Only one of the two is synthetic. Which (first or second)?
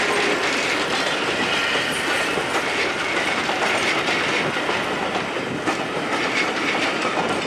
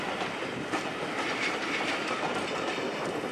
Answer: second